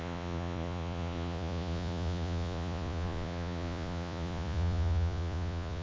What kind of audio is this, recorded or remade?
remade